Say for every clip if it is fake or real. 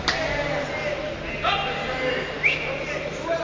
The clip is real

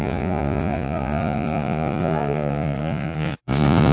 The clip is fake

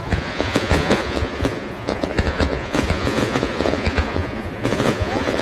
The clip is fake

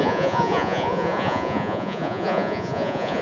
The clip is fake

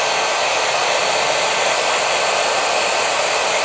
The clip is real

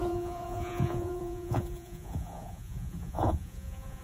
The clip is fake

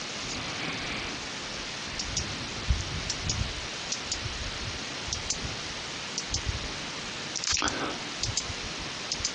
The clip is real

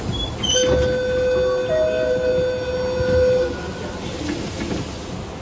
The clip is real